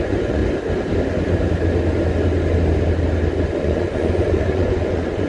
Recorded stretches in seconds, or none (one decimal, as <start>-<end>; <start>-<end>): 0.4-3.6